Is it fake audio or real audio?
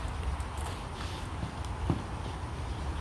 fake